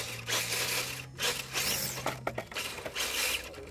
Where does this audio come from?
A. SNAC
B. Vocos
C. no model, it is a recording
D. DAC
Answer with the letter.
C